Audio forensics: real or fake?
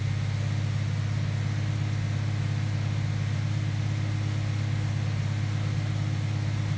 real